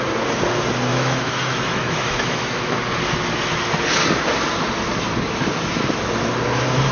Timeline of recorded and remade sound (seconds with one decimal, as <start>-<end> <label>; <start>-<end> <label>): 0.0-0.9 recorded; 0.9-2.8 remade; 2.8-6.9 recorded